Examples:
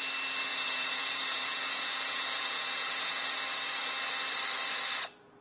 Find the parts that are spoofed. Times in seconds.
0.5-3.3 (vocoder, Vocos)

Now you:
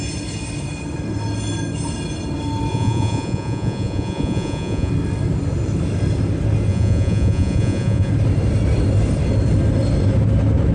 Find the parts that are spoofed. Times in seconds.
2.7-4.9 (vocoder, Vocos); 6.7-8.1

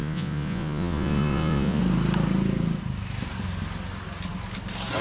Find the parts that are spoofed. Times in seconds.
0.0-1.8 (vocoder, Vocos)

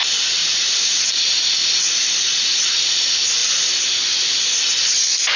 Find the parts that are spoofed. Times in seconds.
0.4-1.1 (vocoder, Vocos); 1.6-2.9